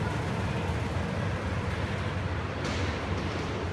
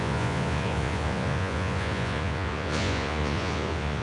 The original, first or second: first